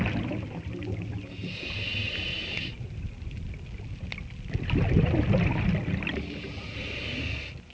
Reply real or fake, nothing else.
real